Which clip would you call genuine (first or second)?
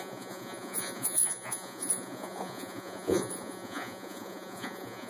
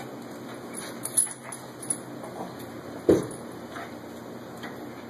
second